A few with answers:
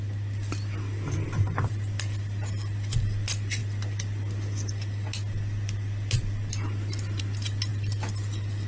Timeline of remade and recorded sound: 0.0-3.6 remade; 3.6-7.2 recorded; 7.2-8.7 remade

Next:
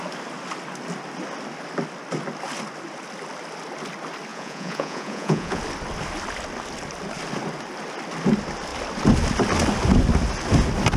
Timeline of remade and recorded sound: 0.0-4.3 recorded; 4.3-5.6 remade; 5.6-11.0 recorded

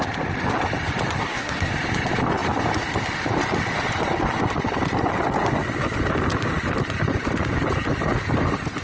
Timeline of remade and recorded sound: 0.0-1.2 recorded; 1.2-1.7 remade; 1.7-8.8 recorded

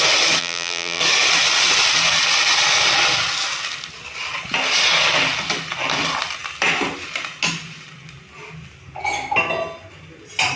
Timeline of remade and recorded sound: 0.0-0.4 recorded; 0.4-1.0 remade; 1.0-10.6 recorded

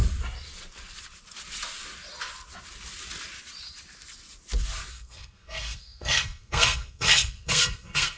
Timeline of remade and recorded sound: 0.0-4.9 recorded; 4.9-8.2 remade

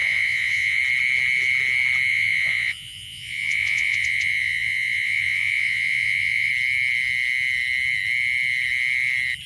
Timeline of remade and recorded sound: 0.0-0.8 remade; 0.8-2.1 recorded; 2.1-6.5 remade; 6.5-9.5 recorded